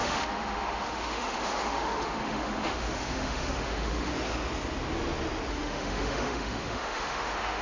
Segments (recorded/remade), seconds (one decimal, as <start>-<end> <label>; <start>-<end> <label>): 0.0-4.1 remade; 4.1-5.5 recorded; 5.5-7.6 remade